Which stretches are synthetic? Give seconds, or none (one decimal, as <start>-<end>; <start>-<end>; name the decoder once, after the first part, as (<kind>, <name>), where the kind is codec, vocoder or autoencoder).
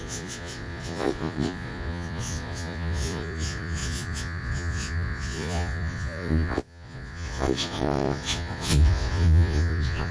0.0-10.1 (vocoder, Vocos)